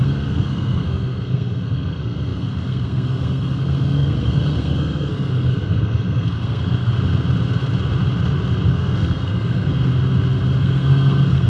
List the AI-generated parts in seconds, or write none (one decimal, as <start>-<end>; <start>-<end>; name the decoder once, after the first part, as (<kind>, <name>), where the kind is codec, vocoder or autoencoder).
0.0-6.9 (codec, SNAC); 8.7-9.9; 10.6-11.5